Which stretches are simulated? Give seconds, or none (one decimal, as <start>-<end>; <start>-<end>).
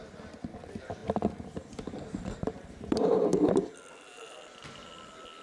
none